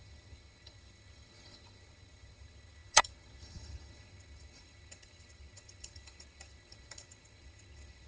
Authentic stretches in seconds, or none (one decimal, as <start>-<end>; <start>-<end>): none